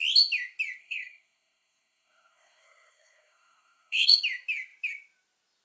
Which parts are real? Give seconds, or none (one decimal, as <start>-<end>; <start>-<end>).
0.0-0.8; 4.2-5.6